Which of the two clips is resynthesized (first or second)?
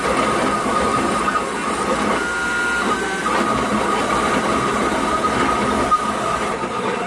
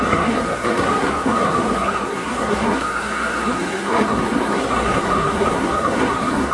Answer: second